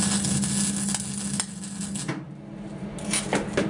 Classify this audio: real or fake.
real